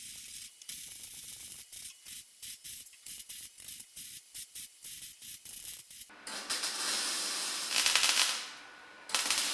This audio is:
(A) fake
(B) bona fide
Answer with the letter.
B